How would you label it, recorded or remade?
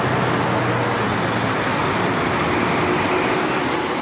recorded